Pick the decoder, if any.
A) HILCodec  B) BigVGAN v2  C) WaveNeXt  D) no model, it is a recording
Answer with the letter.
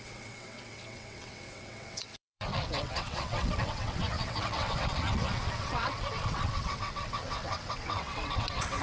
C